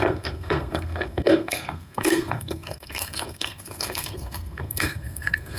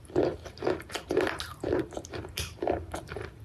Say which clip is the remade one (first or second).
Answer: first